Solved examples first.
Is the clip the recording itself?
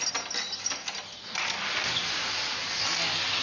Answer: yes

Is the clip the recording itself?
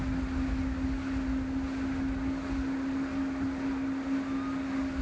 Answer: yes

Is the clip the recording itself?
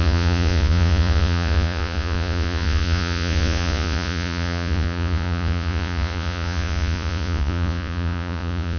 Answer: no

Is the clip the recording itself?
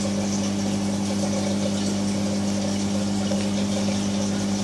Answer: yes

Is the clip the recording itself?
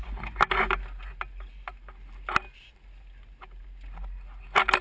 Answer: yes